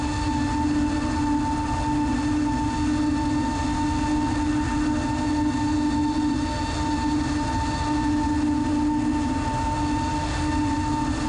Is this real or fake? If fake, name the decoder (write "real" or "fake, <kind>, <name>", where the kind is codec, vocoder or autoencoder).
real